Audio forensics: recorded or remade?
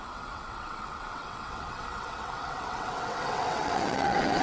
remade